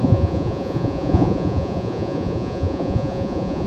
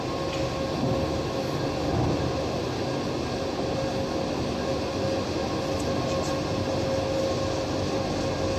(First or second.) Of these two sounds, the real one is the second